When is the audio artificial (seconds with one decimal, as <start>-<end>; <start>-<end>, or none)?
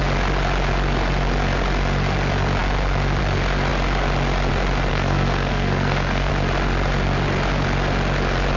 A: 4.9-6.3